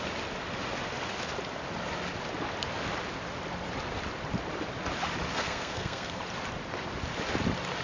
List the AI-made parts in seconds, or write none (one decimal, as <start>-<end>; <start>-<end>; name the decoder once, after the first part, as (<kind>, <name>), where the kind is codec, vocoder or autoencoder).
5.3-6.2 (codec, SNAC)